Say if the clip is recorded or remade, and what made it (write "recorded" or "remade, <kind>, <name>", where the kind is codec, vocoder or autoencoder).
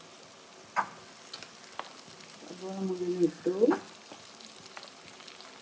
recorded